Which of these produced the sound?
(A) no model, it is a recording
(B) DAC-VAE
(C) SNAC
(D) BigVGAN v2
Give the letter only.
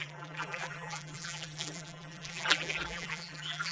D